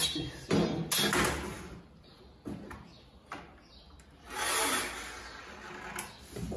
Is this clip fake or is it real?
real